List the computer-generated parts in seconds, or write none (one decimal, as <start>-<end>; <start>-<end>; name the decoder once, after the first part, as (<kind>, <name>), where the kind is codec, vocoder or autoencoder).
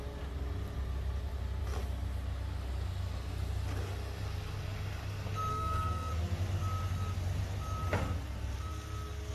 5.5-6.1 (codec, SNAC)